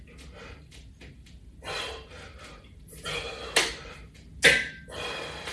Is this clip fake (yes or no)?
no